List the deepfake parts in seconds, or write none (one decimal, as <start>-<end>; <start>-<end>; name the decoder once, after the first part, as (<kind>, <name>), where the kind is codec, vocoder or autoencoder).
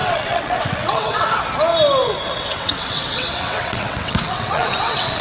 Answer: 0.0-1.4 (vocoder, WaveNeXt); 2.0-5.2